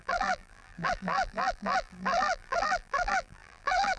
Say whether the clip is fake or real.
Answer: fake